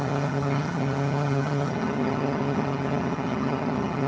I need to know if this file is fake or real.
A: fake